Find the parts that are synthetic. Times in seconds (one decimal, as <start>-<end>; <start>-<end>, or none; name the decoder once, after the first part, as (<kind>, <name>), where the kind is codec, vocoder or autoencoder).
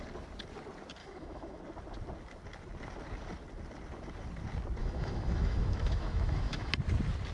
1.0-1.6 (autoencoder, DAC-VAE); 4.8-6.7